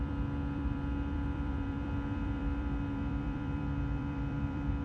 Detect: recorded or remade remade